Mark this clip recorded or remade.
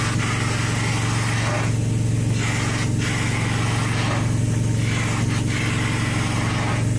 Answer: recorded